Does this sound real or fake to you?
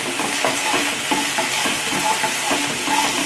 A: real